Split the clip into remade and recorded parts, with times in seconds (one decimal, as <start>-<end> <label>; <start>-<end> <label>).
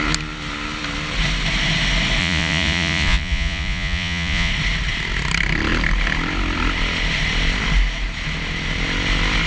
0.0-2.2 recorded; 2.2-4.5 remade; 4.5-9.5 recorded